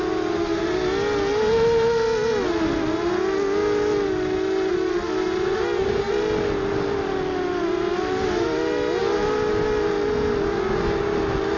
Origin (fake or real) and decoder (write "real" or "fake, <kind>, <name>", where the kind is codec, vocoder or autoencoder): real